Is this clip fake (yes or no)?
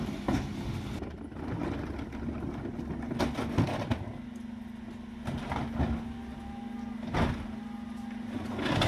no